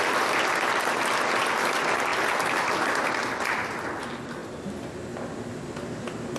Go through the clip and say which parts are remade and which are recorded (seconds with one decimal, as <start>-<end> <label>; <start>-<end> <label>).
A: 0.0-6.4 recorded